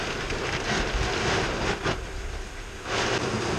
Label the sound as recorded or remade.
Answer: recorded